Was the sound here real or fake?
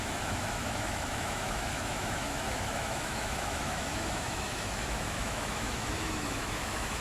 fake